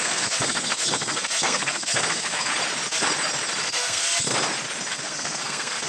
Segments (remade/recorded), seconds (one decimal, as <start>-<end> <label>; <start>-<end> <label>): 0.0-2.5 remade; 2.5-3.6 recorded; 3.6-4.0 remade; 4.0-4.9 recorded; 4.9-5.9 remade